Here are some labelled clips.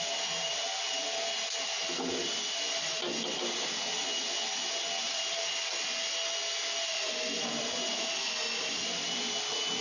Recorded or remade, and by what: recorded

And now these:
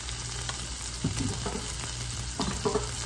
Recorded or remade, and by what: recorded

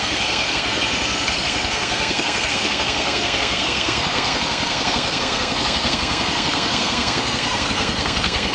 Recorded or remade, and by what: remade, codec, SNAC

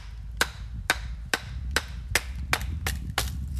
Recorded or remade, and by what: recorded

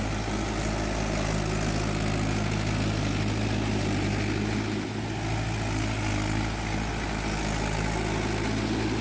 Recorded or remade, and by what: recorded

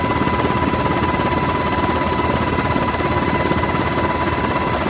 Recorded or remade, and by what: recorded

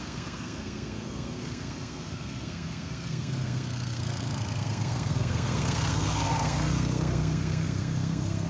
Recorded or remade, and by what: remade, codec, SNAC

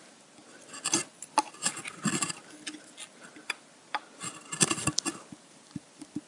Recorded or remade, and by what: recorded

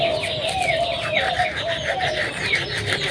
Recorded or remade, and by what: recorded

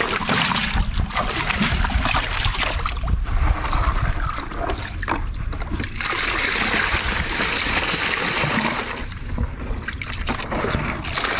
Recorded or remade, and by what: recorded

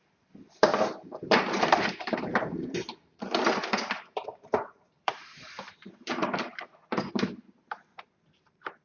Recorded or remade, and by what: remade, vocoder, BigVGAN v2